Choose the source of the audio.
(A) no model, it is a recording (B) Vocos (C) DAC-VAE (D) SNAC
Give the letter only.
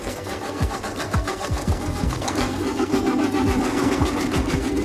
D